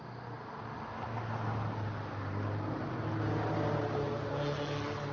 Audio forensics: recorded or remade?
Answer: recorded